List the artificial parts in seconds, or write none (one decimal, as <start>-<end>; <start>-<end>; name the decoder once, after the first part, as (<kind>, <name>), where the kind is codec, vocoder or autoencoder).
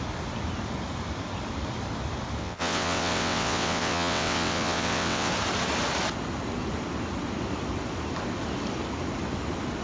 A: 2.4-5.3 (vocoder, WaveNeXt)